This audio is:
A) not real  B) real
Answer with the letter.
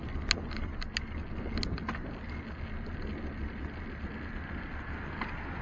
B